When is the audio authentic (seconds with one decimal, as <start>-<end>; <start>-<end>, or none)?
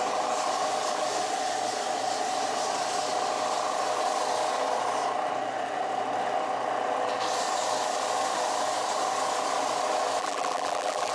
0.0-10.2